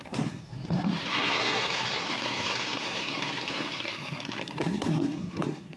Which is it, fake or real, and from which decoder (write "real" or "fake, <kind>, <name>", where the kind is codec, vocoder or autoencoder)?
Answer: fake, codec, SNAC